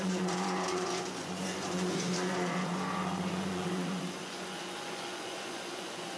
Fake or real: fake